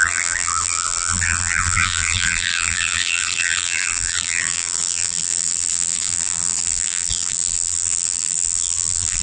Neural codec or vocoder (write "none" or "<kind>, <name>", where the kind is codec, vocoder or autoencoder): vocoder, BigVGAN v2